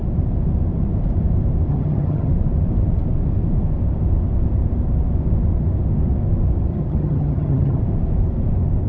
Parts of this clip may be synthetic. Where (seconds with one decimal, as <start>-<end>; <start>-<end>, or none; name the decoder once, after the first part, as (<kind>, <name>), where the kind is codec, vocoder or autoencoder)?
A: 1.7-2.3 (vocoder, HiFi-GAN); 6.7-7.8